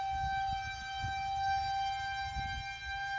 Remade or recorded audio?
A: recorded